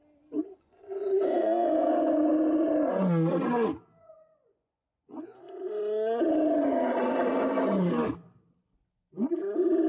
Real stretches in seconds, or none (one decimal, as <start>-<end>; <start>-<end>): 0.0-0.4; 2.3-4.0; 5.8-9.9